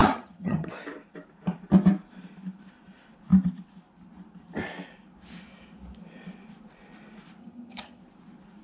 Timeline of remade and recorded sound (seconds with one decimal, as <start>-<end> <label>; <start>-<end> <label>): 0.0-0.7 remade; 0.7-7.4 recorded; 7.4-8.0 remade; 8.0-8.6 recorded